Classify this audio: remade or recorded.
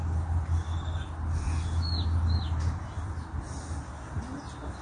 recorded